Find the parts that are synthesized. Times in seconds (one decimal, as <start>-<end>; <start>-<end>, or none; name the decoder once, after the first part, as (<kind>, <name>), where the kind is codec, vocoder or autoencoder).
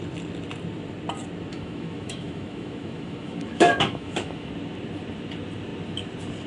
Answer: 1.5-4.5 (autoencoder, DAC-VAE)